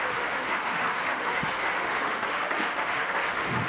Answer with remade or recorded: remade